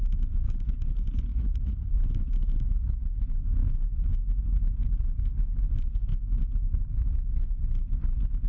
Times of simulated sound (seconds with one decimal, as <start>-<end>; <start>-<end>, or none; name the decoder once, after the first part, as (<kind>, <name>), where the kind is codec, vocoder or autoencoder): 1.3-2.0 (vocoder, Vocos)